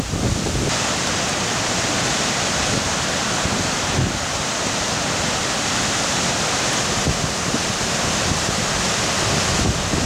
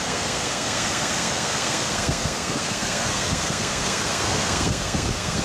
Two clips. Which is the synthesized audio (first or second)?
second